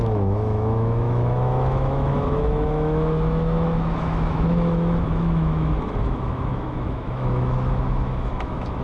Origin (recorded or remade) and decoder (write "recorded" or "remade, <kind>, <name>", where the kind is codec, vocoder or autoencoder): remade, autoencoder, DAC-VAE